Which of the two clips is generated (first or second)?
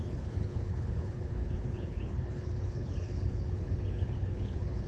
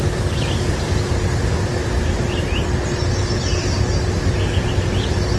first